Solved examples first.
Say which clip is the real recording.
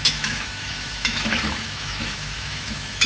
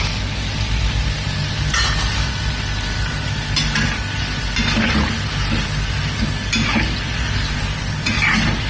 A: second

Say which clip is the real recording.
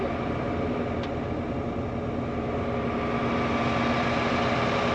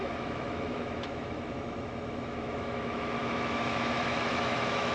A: first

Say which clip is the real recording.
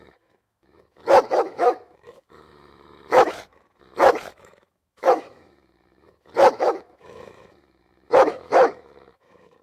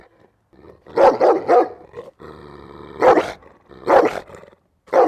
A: second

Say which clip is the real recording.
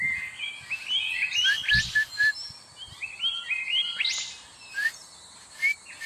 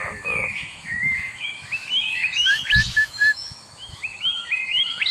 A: first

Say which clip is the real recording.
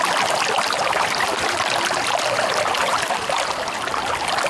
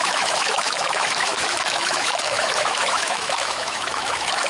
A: first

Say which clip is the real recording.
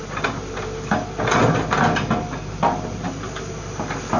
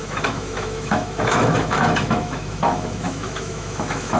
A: first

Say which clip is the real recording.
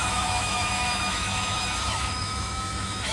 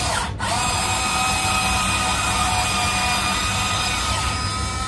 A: second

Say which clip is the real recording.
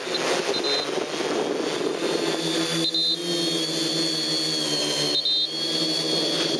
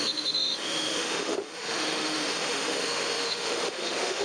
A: first